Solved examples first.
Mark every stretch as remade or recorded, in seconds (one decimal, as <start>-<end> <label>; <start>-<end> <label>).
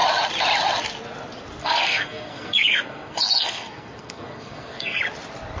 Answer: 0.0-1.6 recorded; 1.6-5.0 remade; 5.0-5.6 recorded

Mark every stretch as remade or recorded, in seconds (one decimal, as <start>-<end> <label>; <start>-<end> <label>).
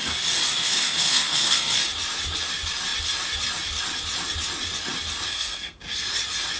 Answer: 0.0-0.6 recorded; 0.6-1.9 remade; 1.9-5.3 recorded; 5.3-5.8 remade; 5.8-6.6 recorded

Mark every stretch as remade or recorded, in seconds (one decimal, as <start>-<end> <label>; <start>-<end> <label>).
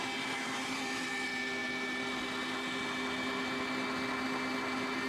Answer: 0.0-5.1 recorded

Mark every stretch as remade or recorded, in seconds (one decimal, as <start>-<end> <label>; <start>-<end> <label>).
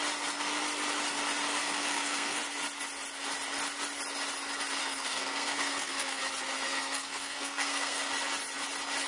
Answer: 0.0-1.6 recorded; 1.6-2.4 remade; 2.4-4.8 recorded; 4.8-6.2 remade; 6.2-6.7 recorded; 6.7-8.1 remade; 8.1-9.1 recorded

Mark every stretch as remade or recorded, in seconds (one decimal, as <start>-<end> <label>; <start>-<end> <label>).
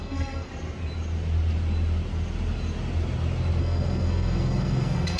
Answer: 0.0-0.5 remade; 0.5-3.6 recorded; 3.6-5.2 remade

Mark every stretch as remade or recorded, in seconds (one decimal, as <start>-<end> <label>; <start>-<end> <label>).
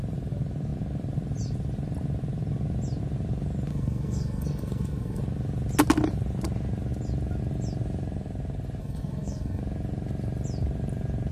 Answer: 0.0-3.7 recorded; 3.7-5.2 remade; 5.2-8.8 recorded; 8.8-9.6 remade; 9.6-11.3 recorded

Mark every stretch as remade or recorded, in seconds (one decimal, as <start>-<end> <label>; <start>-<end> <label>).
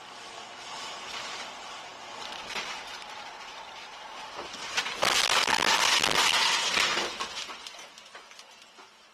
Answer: 0.0-9.1 recorded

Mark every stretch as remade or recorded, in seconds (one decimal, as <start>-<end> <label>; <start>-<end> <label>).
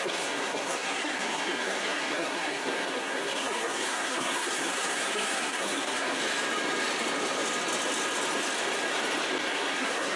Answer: 0.0-6.2 remade; 6.2-9.5 recorded; 9.5-10.2 remade